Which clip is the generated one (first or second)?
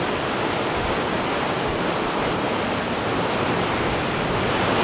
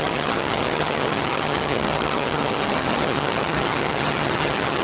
second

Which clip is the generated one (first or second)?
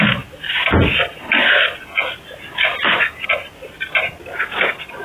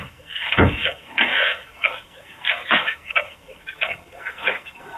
second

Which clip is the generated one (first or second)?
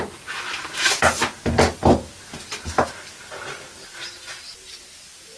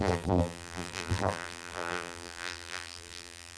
second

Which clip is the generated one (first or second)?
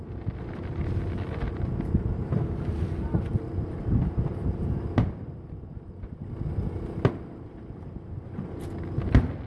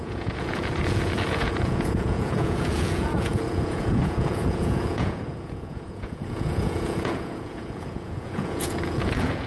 second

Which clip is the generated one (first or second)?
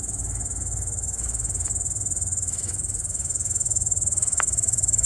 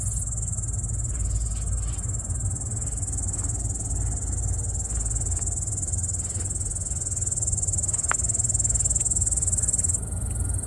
first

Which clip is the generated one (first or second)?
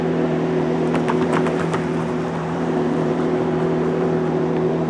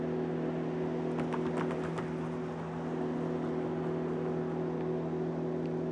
first